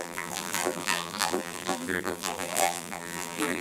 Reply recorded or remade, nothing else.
remade